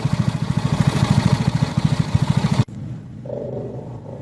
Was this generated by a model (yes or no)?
yes